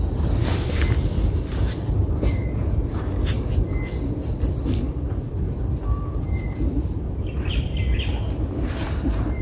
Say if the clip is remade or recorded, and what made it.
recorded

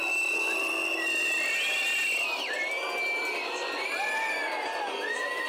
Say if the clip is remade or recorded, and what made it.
recorded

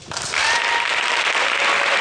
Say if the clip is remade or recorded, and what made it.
recorded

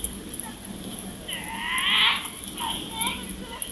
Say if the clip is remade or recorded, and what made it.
recorded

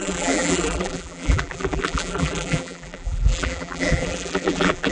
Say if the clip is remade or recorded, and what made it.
remade, vocoder, BigVGAN v2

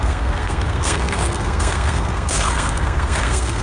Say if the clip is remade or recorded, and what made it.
remade, codec, SNAC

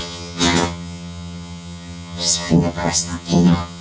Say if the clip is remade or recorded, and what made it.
remade, vocoder, HiFi-GAN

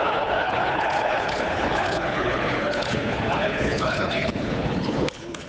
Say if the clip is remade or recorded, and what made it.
remade, codec, HILCodec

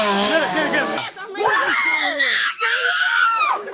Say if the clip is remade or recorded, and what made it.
remade, codec, DAC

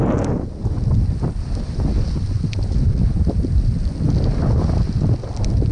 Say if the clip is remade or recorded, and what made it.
recorded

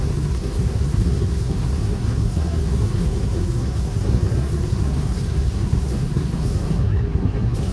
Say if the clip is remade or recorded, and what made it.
remade, codec, SNAC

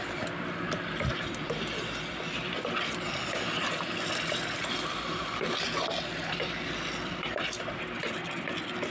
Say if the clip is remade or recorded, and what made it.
remade, vocoder, BigVGAN v2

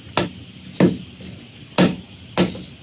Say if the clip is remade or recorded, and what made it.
recorded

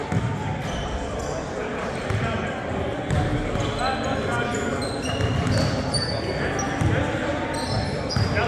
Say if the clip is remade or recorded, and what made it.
recorded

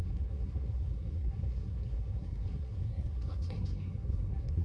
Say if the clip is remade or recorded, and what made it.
remade, codec, SNAC